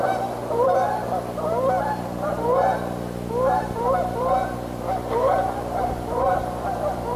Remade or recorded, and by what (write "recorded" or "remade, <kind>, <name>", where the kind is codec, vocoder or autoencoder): remade, vocoder, BigVGAN v2